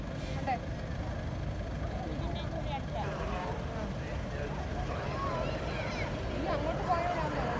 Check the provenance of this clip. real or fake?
real